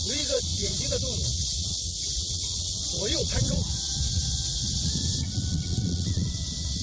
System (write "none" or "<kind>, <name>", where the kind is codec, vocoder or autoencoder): vocoder, Vocos